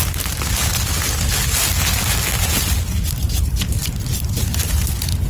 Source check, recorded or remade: recorded